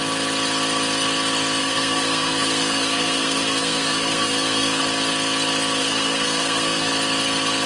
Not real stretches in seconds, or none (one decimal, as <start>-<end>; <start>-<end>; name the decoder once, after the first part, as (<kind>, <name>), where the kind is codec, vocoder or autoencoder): 1.6-4.8 (codec, SNAC); 5.8-6.9